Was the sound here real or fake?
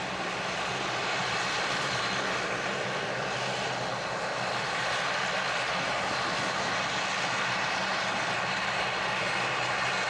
real